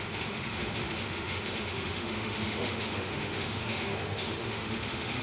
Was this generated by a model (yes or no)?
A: yes